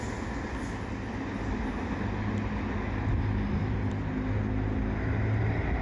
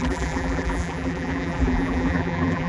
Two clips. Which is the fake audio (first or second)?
second